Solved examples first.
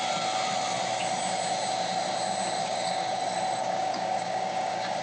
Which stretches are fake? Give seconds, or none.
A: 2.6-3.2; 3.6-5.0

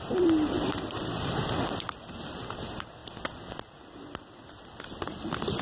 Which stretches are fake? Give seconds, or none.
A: none

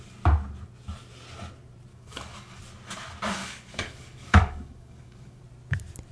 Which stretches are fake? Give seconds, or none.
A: 1.9-2.6; 3.4-5.4